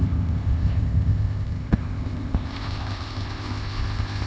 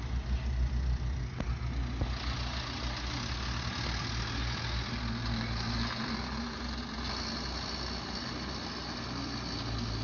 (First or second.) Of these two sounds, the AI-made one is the first